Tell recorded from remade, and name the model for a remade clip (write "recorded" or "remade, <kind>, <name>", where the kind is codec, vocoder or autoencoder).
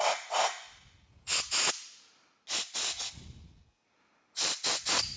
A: recorded